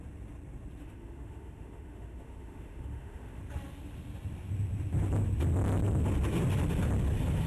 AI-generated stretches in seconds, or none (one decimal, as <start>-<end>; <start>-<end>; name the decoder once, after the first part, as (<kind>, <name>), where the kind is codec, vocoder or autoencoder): 0.8-3.4 (autoencoder, DAC-VAE)